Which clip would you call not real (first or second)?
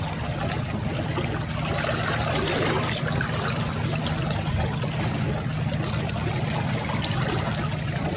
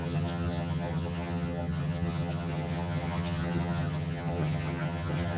second